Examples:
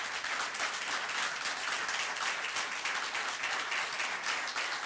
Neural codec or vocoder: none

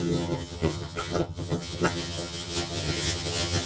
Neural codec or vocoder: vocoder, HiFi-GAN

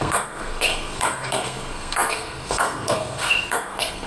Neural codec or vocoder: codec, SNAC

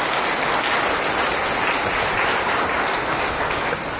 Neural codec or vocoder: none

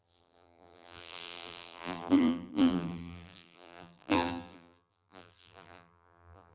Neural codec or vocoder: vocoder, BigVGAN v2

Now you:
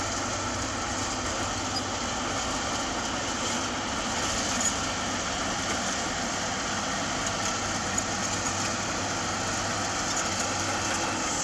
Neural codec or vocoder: none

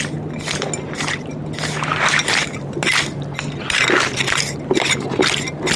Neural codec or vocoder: none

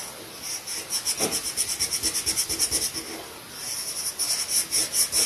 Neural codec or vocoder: none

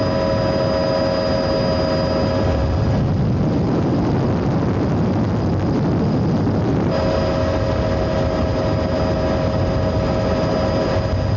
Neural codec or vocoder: none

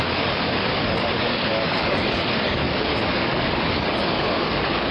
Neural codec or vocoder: codec, DAC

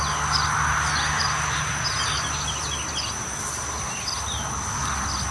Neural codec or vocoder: none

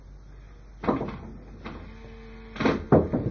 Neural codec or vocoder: none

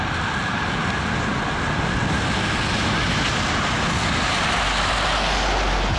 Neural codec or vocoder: none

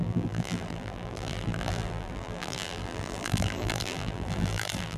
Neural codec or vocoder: vocoder, BigVGAN v2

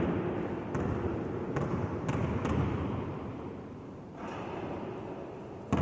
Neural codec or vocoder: none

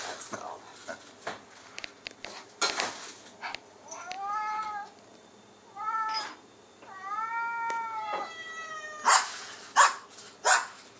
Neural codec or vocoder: none